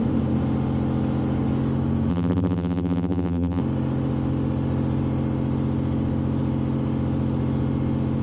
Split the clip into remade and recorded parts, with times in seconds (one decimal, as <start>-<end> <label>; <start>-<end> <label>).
0.0-2.1 recorded; 2.1-3.6 remade; 3.6-8.2 recorded